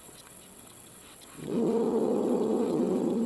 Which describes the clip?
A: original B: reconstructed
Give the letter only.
B